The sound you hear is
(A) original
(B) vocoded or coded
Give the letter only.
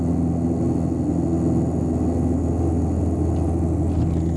A